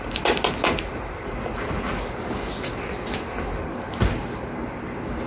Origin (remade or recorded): recorded